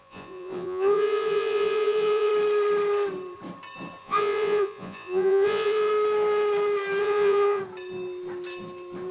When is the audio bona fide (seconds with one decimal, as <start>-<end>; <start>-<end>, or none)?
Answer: 2.3-4.0; 5.9-7.0; 7.6-9.1

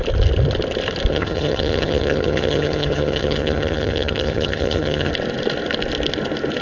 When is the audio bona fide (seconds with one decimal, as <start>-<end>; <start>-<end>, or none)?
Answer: 0.0-1.1; 5.1-6.6

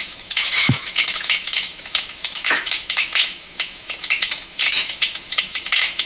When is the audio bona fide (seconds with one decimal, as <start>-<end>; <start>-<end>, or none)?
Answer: none

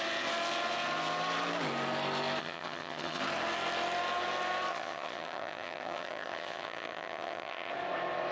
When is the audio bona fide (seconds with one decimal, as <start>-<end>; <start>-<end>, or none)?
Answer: 0.0-2.4; 3.2-4.7; 7.7-8.3

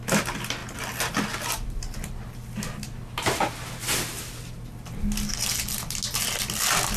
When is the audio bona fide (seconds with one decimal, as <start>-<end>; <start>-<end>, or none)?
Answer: 0.0-7.0

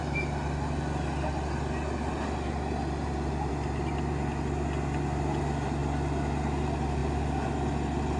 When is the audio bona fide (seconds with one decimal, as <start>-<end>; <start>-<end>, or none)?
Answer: 0.0-8.2